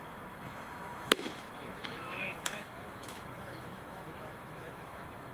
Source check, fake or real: fake